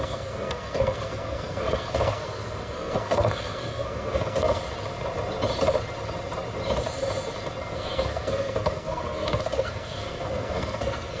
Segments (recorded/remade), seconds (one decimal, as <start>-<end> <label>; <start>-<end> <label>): 0.0-4.6 remade; 4.6-7.6 recorded; 7.6-11.2 remade